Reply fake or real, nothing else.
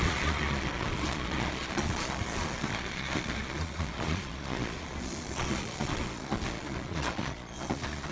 fake